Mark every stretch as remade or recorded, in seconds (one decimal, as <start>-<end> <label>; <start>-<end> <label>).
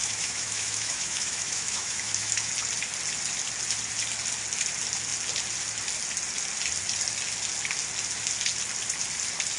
0.0-2.5 remade; 2.5-9.6 recorded